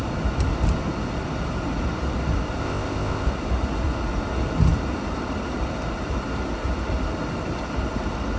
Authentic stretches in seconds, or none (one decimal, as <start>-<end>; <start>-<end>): 0.0-2.6; 3.3-8.4